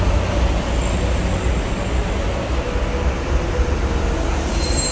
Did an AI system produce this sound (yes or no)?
no